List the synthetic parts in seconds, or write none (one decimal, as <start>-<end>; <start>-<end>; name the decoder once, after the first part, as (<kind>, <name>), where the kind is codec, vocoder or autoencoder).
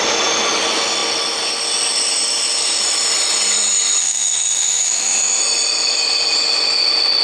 4.0-5.4 (autoencoder, DAC-VAE)